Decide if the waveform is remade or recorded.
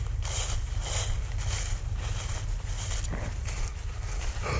recorded